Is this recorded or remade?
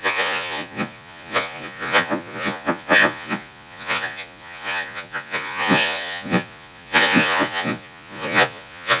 remade